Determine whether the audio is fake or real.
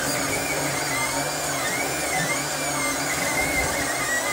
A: real